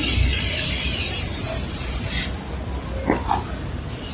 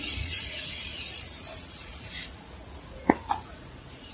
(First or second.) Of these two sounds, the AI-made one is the second